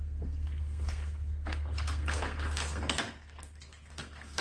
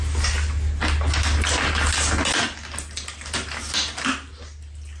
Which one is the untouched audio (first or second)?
second